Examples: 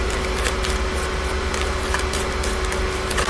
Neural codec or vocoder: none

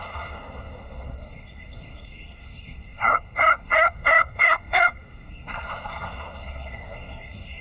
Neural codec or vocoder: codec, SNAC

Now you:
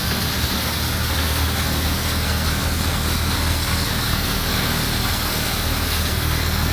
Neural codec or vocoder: codec, SNAC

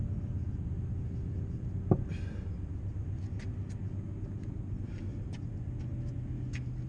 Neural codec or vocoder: none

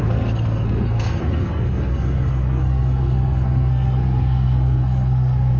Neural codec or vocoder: codec, SNAC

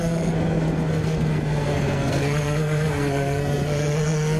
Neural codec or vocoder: codec, SNAC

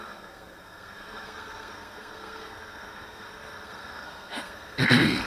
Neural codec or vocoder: codec, SNAC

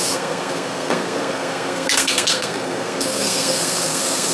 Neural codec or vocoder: codec, SNAC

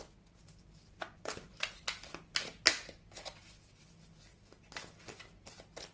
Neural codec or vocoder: none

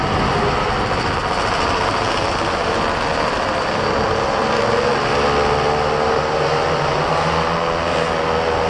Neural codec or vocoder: none